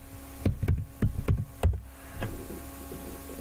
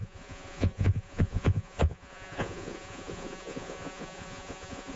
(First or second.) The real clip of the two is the first